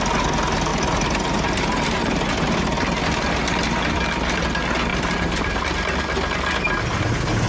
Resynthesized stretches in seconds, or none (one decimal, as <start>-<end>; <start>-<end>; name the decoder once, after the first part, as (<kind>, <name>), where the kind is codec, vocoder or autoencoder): 0.7-2.3 (vocoder, BigVGAN v2); 4.9-5.6